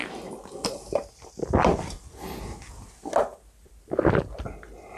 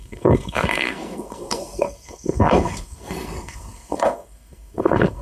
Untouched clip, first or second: first